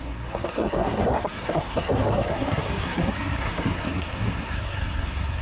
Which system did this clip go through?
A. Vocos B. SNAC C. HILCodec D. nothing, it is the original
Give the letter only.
B